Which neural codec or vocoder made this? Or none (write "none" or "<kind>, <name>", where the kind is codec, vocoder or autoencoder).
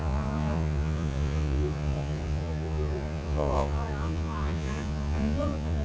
vocoder, Vocos